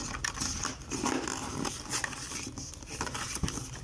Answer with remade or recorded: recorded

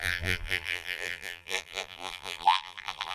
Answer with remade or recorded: remade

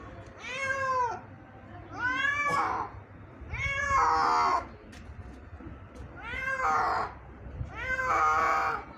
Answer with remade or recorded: recorded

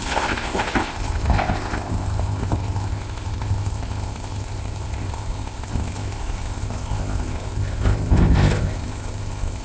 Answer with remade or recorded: remade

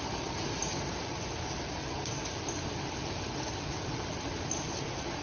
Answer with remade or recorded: recorded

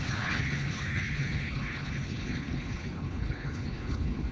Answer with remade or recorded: remade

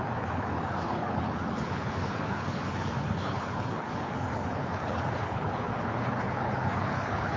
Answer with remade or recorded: remade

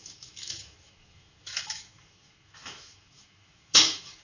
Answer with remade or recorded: remade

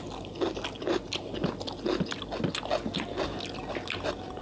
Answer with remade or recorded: recorded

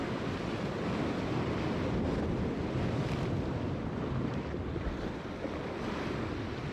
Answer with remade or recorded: recorded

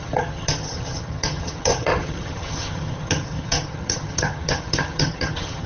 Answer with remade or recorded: remade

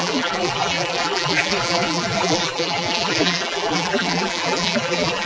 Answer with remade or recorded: remade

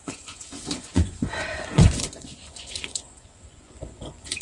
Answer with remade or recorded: remade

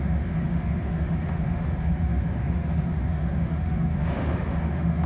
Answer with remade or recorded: remade